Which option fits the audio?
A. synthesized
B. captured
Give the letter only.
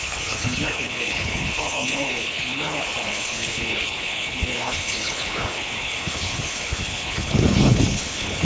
A